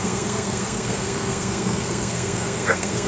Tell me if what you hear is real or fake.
fake